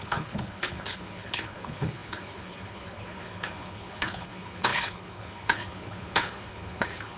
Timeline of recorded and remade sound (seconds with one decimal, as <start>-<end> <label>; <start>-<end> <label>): 0.0-7.2 remade